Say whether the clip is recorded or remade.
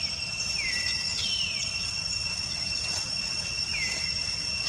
recorded